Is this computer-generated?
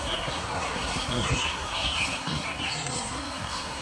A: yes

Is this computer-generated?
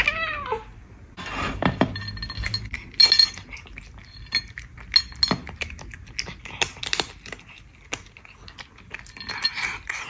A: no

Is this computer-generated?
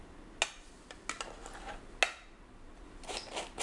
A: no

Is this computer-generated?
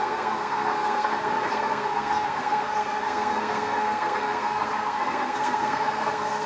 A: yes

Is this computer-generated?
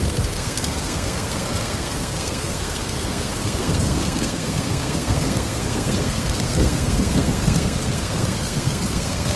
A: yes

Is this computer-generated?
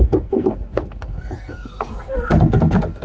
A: yes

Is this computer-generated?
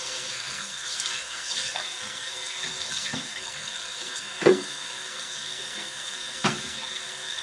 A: yes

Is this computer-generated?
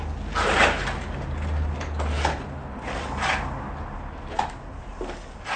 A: no